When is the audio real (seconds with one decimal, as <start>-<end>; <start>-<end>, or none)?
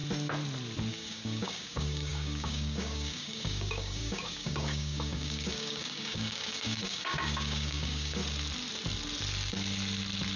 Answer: 0.0-0.9; 8.2-10.4